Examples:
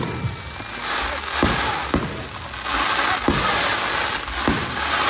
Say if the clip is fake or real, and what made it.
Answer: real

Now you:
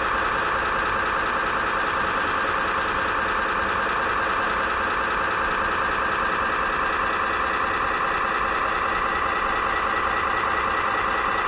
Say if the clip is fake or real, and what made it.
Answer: real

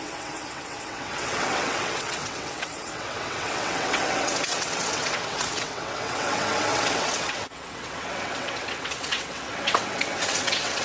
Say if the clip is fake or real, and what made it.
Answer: fake, vocoder, WaveNeXt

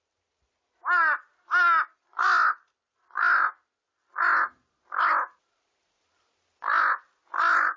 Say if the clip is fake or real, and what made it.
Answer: real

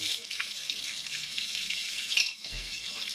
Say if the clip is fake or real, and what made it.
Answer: fake, codec, SNAC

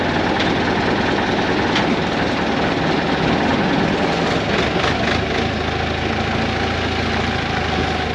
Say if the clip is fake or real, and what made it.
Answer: real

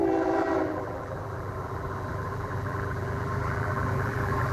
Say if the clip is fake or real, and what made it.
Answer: fake, vocoder, BigVGAN v2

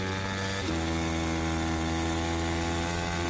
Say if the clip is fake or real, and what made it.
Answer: real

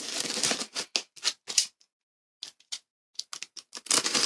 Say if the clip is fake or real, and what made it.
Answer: real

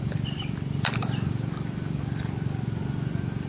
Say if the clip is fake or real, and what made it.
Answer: real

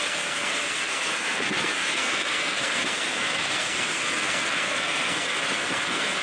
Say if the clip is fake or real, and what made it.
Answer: fake, codec, SNAC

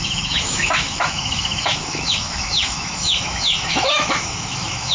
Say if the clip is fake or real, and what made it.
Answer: fake, autoencoder, DAC-VAE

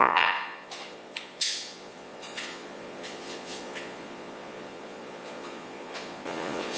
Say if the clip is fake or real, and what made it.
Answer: fake, vocoder, Vocos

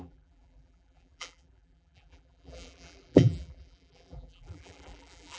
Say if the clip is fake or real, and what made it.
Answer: fake, vocoder, BigVGAN v2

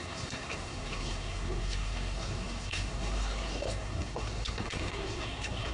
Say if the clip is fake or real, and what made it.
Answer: fake, codec, SNAC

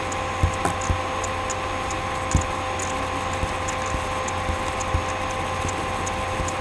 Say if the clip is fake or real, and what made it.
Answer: real